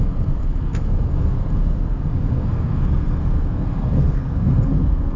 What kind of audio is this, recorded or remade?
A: remade